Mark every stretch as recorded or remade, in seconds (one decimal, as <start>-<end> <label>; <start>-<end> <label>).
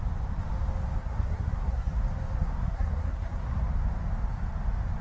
0.0-1.0 recorded; 1.0-1.9 remade; 1.9-2.4 recorded; 2.4-3.6 remade; 3.6-5.0 recorded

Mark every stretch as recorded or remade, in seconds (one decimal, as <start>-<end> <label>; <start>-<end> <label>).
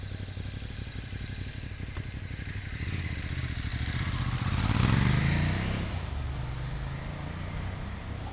0.0-3.7 recorded; 3.7-4.8 remade; 4.8-8.3 recorded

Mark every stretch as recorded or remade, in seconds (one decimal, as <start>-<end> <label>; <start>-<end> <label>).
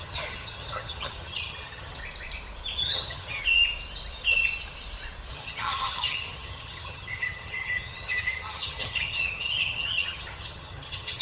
0.0-2.0 remade; 2.0-2.8 recorded; 2.8-3.4 remade; 3.4-5.3 recorded; 5.3-11.2 remade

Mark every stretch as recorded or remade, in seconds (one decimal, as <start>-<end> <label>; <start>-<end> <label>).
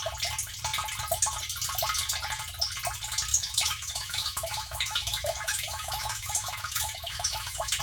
0.0-3.3 recorded; 3.3-7.8 remade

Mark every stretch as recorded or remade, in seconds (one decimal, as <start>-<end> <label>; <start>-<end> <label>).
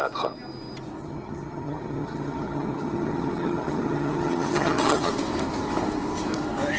0.0-1.0 recorded; 1.0-5.1 remade; 5.1-6.8 recorded